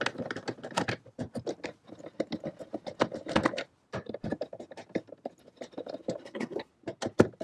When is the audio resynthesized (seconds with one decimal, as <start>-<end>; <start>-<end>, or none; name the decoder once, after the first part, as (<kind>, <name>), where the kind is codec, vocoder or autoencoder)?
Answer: 6.2-6.7 (codec, SNAC)